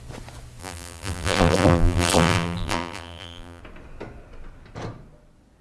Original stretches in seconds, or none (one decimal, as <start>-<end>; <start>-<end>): 0.0-0.6; 3.6-5.6